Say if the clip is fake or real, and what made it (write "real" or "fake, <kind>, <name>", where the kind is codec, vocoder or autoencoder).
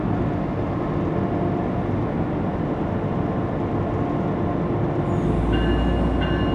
real